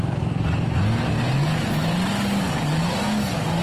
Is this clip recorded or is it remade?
recorded